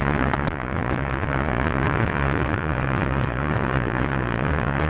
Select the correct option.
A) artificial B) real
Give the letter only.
A